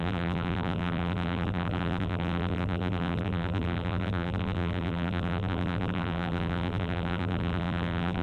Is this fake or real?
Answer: fake